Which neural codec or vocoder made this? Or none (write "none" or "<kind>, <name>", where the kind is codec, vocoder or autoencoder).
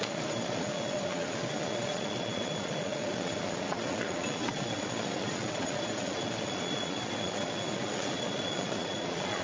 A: vocoder, Vocos